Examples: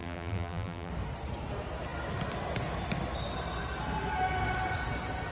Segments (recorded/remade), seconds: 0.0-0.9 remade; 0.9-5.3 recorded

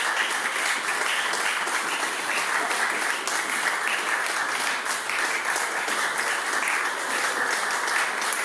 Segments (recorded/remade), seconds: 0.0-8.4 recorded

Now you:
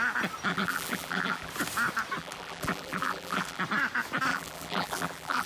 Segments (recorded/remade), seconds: 0.0-0.5 recorded; 0.5-1.5 remade; 1.5-2.2 recorded; 2.2-3.6 remade; 3.6-4.3 recorded; 4.3-5.5 remade

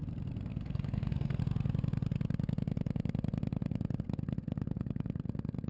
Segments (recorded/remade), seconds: 0.0-0.5 recorded; 0.5-1.4 remade; 1.4-5.7 recorded

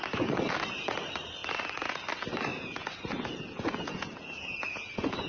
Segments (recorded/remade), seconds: 0.0-1.4 recorded; 1.4-2.0 remade; 2.0-2.5 recorded; 2.5-5.3 remade